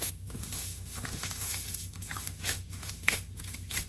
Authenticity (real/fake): fake